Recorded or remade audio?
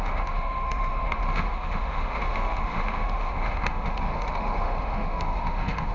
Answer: remade